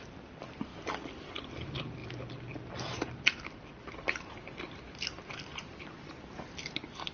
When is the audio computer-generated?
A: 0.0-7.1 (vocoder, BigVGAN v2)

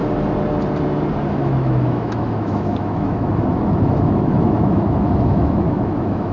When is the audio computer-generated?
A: 1.3-6.3 (autoencoder, DAC-VAE)

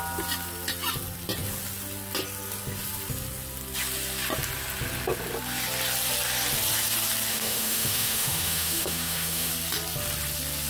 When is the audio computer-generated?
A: 7.3-9.5 (autoencoder, DAC-VAE)

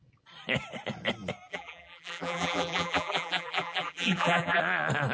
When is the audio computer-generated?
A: 1.5-4.6 (vocoder, BigVGAN v2)

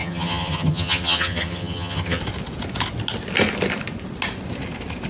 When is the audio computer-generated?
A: 0.0-2.2 (vocoder, HiFi-GAN)